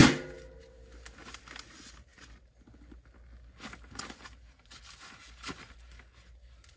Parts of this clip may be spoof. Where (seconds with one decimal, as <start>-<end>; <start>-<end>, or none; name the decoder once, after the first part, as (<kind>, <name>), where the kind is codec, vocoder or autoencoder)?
none